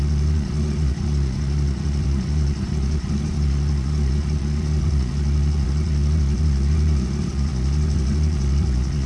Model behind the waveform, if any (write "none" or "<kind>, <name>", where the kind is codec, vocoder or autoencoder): vocoder, Vocos